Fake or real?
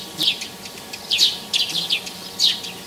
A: real